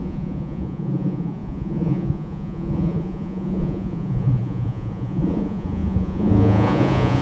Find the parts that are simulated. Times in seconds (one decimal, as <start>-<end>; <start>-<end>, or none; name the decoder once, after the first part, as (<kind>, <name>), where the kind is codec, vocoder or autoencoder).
0.0-7.2 (vocoder, Vocos)